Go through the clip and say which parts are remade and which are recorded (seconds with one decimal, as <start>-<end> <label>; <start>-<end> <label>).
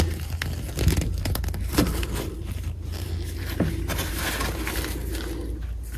0.0-1.1 recorded; 1.1-4.2 remade; 4.2-6.0 recorded